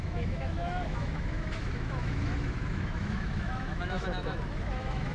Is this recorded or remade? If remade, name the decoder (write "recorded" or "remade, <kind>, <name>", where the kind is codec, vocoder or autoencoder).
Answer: remade, autoencoder, DAC-VAE